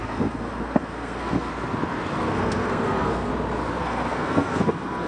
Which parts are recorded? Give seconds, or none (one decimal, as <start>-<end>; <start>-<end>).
1.5-2.1; 3.3-3.8